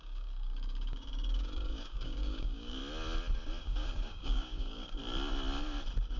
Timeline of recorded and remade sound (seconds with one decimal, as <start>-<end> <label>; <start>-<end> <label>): 0.0-2.8 remade; 2.8-3.6 recorded; 3.6-5.0 remade; 5.0-6.2 recorded